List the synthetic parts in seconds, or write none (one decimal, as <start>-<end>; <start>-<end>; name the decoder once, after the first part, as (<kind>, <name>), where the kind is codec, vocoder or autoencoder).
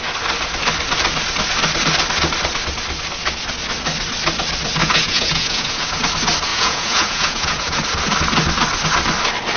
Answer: 4.8-6.0 (vocoder, Vocos); 6.5-7.8